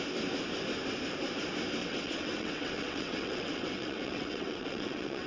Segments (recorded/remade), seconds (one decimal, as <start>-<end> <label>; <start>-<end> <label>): 0.0-1.8 recorded; 1.8-5.3 remade